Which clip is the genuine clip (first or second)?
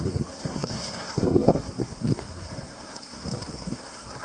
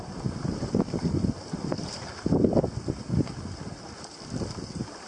second